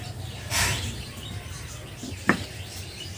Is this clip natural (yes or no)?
no